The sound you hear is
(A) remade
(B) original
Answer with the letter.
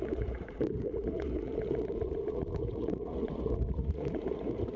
A